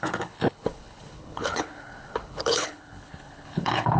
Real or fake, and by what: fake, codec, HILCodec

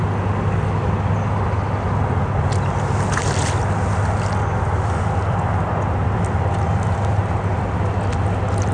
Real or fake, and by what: real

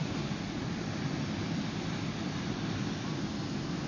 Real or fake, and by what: real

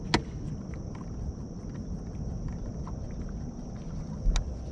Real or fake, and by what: real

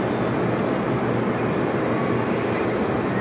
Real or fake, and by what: real